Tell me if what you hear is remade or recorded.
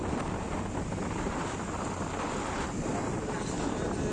recorded